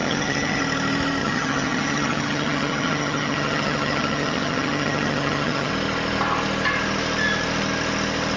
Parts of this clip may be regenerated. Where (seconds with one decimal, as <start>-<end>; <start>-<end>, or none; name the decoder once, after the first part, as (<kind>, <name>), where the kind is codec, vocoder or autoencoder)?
0.0-0.6 (vocoder, HiFi-GAN); 1.2-5.7